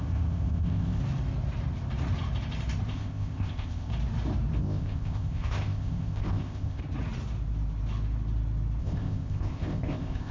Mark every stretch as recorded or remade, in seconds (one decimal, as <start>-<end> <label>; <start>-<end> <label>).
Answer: 0.0-1.0 remade; 1.0-2.9 recorded; 2.9-3.9 remade; 3.9-4.6 recorded; 4.6-6.8 remade; 6.8-8.8 recorded; 8.8-10.3 remade